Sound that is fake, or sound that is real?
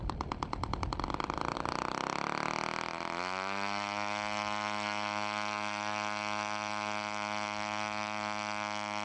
real